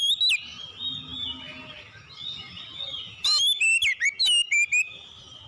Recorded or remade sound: recorded